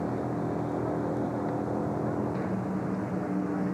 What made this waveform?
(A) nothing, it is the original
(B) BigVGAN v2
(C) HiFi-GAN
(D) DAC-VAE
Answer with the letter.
A